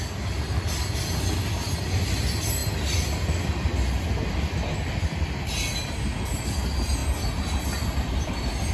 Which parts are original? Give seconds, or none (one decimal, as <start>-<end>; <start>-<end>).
0.0-8.7